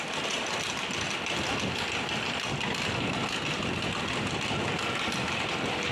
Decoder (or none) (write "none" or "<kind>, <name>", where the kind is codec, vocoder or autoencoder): none